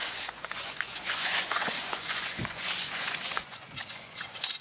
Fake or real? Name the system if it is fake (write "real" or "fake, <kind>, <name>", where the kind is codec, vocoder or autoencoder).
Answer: fake, vocoder, Vocos